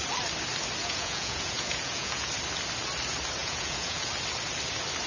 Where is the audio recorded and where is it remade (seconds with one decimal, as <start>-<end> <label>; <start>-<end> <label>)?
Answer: 0.0-0.8 recorded; 0.8-2.3 remade; 2.3-3.4 recorded; 3.4-4.1 remade; 4.1-5.1 recorded